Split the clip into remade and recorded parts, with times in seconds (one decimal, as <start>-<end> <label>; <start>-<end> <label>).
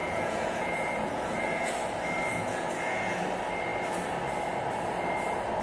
0.0-1.7 remade; 1.7-2.3 recorded; 2.3-3.2 remade; 3.2-5.6 recorded